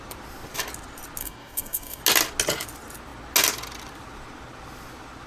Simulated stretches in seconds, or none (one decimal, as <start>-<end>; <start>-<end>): 1.2-2.0